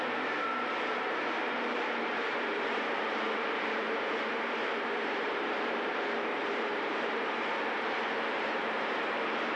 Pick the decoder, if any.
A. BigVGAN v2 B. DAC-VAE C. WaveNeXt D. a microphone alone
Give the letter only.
A